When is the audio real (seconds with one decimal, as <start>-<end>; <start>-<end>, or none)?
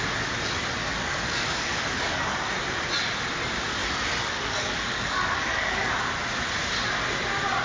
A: 0.0-0.8; 2.5-3.8; 5.9-7.6